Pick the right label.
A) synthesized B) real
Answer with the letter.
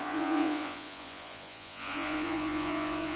A